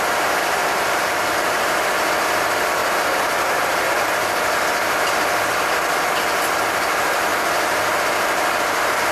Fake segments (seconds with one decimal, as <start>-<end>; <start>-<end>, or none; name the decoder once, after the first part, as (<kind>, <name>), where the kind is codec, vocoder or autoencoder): 0.6-1.8 (vocoder, BigVGAN v2); 2.8-3.9; 7.3-8.1